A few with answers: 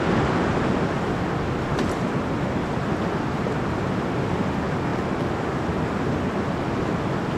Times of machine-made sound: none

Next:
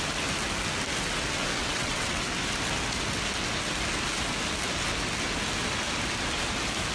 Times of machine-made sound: 1.6-2.2 (vocoder, WaveNeXt)

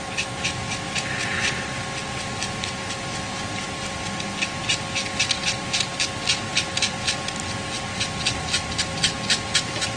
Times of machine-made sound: none

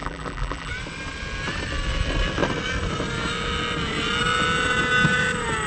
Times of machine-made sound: 0.0-0.7 (vocoder, BigVGAN v2)

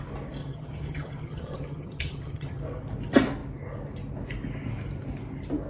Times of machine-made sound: 0.4-2.6 (vocoder, HiFi-GAN)